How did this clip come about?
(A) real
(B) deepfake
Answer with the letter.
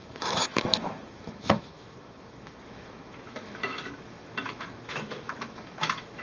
B